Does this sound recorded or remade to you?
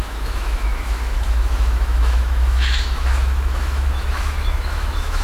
remade